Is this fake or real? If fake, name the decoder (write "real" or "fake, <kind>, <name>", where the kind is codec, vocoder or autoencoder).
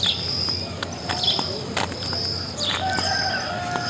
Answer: real